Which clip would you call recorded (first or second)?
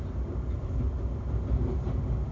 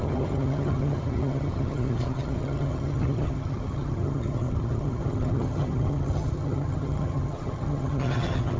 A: first